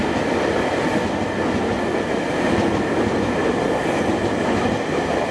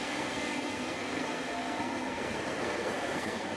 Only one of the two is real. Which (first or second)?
first